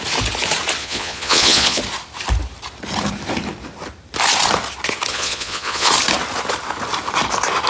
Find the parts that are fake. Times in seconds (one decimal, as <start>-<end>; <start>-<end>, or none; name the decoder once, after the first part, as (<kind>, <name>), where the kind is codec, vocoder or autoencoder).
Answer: 0.8-1.8 (vocoder, Vocos); 5.1-5.9